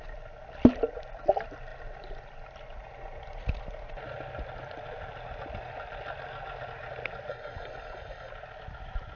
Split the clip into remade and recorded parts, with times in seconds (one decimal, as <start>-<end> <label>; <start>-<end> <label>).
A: 0.0-7.3 recorded; 7.3-8.3 remade; 8.3-9.2 recorded